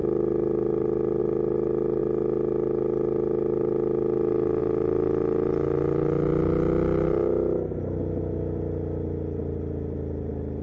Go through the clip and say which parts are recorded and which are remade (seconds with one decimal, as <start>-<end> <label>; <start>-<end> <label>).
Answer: 0.0-10.6 recorded